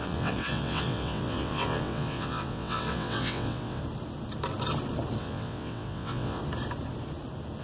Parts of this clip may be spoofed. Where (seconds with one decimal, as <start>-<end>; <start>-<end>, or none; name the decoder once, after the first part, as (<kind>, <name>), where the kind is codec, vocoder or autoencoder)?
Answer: 0.0-3.8 (vocoder, WaveNeXt); 5.2-6.4